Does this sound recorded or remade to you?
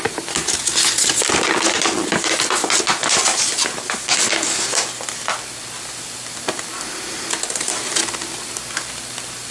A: recorded